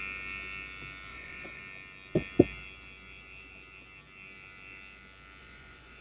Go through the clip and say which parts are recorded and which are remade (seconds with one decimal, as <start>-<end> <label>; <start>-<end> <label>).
0.0-1.1 recorded; 1.1-1.6 remade; 1.6-5.4 recorded; 5.4-6.0 remade

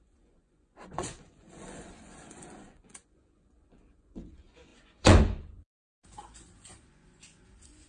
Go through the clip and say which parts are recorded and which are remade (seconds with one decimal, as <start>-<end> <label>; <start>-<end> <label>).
0.0-7.9 remade

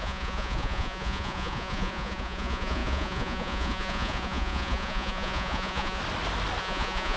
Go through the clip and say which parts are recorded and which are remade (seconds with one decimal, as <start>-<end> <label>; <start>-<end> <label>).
0.0-6.0 remade; 6.0-6.6 recorded; 6.6-7.2 remade

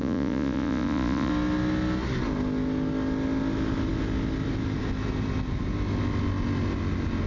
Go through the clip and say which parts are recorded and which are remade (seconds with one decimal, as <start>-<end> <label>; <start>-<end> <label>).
0.0-1.3 remade; 1.3-7.3 recorded

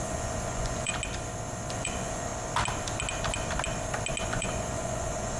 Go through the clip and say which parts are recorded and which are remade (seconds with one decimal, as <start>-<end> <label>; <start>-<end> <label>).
0.0-0.9 remade; 0.9-1.7 recorded; 1.7-2.3 remade; 2.3-4.2 recorded; 4.2-5.4 remade

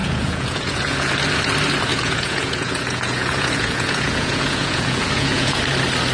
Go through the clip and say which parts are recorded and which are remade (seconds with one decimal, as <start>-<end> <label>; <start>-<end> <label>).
0.0-1.1 remade; 1.1-1.9 recorded; 1.9-5.6 remade; 5.6-6.1 recorded

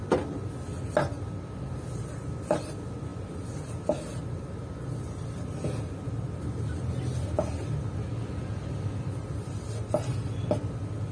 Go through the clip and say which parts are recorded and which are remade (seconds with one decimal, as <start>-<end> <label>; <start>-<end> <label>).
0.0-11.1 recorded